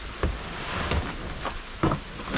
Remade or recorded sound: recorded